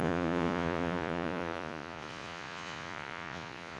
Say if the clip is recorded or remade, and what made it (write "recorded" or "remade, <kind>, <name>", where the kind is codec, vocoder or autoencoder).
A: remade, vocoder, Vocos